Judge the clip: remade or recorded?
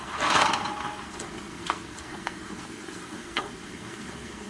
remade